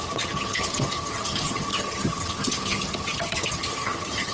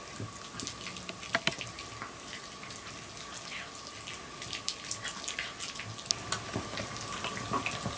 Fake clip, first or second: first